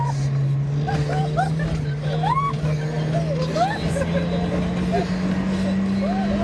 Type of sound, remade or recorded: recorded